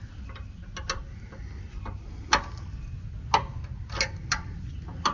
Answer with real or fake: real